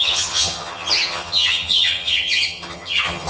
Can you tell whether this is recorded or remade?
remade